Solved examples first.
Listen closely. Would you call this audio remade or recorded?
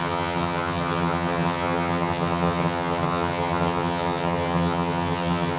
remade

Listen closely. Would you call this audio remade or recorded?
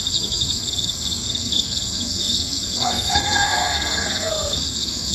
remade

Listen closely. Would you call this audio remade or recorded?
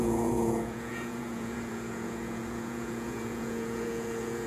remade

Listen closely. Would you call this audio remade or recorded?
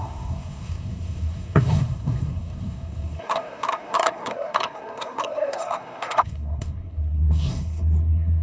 remade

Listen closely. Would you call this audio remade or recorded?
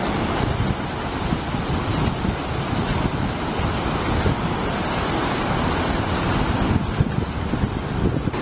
recorded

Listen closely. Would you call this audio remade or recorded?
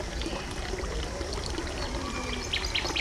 recorded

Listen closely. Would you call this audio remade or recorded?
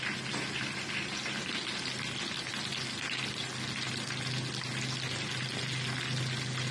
recorded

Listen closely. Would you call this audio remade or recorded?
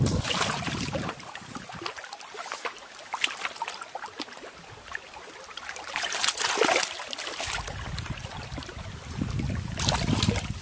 recorded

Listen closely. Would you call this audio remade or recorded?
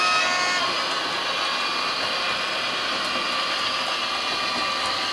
recorded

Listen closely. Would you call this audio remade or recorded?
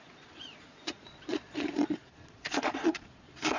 remade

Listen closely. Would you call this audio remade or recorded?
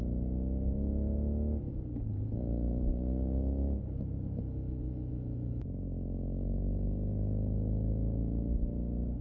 recorded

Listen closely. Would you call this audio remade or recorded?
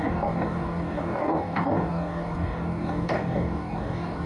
remade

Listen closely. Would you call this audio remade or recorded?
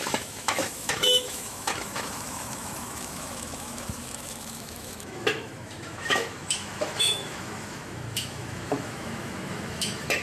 remade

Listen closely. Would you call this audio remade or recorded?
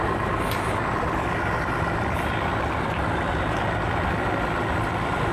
recorded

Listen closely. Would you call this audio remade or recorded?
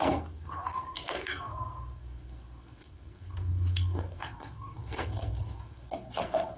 remade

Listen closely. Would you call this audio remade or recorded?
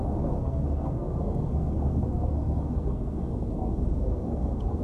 remade